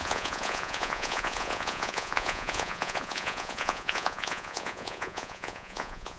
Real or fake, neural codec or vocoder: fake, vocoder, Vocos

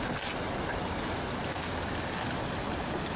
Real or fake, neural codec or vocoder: real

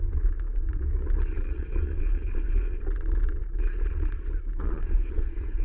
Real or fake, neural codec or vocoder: fake, vocoder, Vocos